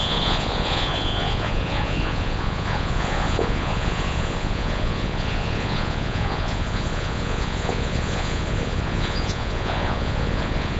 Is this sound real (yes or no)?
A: no